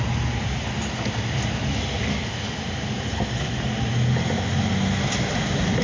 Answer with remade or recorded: recorded